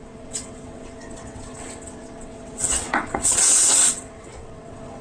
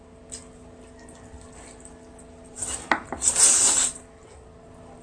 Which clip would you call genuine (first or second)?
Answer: second